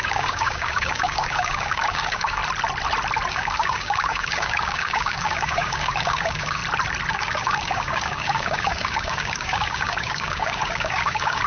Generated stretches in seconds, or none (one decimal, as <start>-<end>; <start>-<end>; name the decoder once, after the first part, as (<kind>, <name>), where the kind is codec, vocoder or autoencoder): 0.0-2.4 (codec, DAC); 3.3-6.6; 7.1-11.5